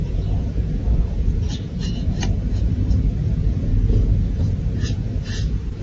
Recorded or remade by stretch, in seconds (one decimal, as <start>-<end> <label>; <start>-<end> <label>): 0.0-5.8 remade